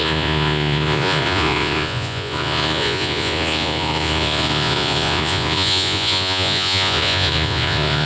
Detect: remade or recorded remade